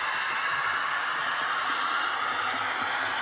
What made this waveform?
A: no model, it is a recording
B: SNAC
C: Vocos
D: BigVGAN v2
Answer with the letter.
A